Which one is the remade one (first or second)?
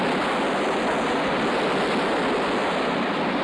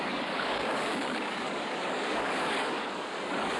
second